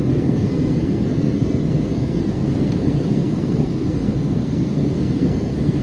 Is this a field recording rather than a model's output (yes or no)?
no